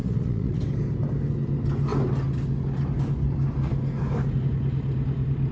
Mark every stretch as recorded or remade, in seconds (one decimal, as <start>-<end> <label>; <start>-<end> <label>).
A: 0.0-0.6 remade; 0.6-5.5 recorded